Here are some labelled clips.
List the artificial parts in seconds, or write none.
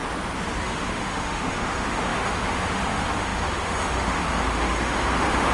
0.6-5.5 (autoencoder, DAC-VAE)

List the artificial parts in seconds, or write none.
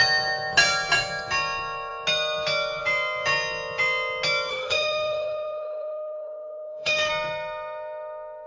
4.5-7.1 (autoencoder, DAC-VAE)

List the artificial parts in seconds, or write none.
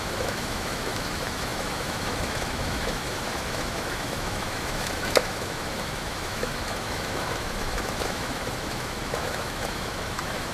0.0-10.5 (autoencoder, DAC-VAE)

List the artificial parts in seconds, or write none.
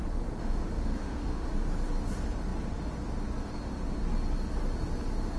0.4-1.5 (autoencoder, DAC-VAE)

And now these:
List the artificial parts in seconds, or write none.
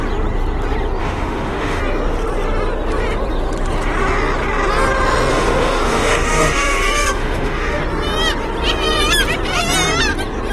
1.0-1.8 (autoencoder, DAC-VAE); 5.3-7.8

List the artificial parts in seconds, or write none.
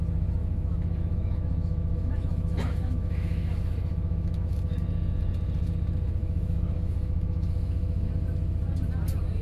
0.4-4.8 (autoencoder, DAC-VAE); 6.2-8.1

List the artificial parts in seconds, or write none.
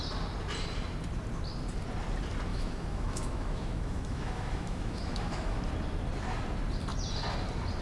2.5-5.6 (autoencoder, DAC-VAE)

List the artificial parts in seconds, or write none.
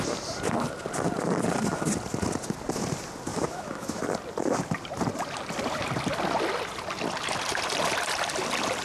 3.3-4.0 (autoencoder, DAC-VAE)